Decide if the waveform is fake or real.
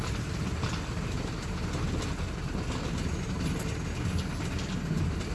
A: real